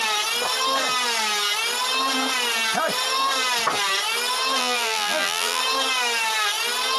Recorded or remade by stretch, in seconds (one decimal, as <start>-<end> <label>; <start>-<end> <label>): 0.0-4.6 recorded; 4.6-5.6 remade; 5.6-7.0 recorded